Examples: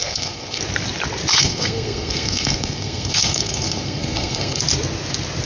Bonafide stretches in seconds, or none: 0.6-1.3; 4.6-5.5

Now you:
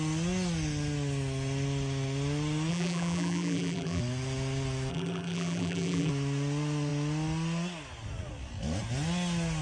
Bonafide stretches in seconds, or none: 0.0-2.7; 4.0-4.9; 6.1-9.6

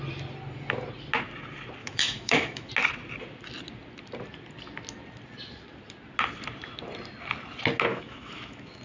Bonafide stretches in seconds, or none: 0.0-1.8; 2.7-7.9

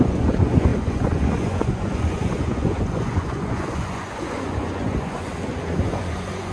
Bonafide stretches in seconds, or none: 5.3-5.8